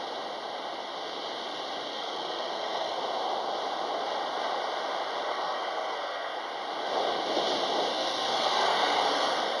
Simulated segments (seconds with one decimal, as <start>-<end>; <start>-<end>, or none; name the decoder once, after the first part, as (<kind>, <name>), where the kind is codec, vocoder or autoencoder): 1.9-3.0 (codec, SNAC); 5.3-6.4; 7.9-9.6